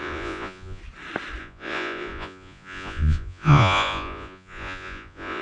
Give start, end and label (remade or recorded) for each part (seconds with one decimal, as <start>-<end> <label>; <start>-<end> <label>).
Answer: 0.0-0.8 remade; 0.8-1.4 recorded; 1.4-5.4 remade